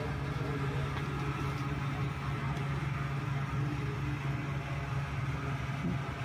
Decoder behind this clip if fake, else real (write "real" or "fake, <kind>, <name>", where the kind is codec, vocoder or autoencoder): real